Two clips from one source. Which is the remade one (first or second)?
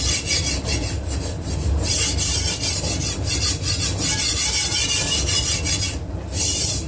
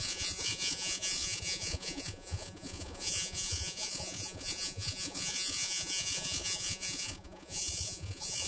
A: second